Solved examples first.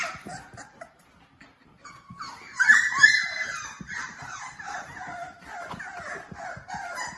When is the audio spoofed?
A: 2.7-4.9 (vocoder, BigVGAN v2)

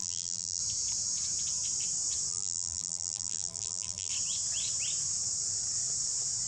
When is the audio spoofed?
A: 0.0-0.6 (vocoder, BigVGAN v2); 2.3-4.1

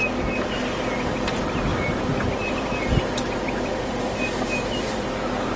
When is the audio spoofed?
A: 1.7-5.1 (vocoder, BigVGAN v2)

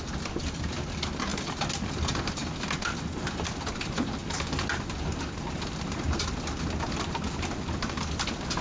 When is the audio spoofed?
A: 0.0-4.2 (vocoder, BigVGAN v2); 6.9-8.6

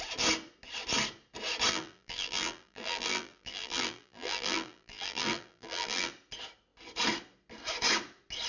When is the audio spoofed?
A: 1.7-6.1 (vocoder, BigVGAN v2)

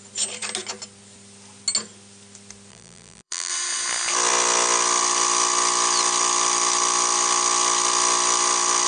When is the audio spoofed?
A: 2.7-3.5 (vocoder, BigVGAN v2)

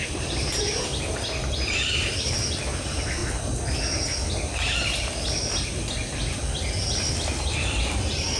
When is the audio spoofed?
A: 0.0-0.9 (vocoder, BigVGAN v2); 1.5-3.2; 7.4-8.4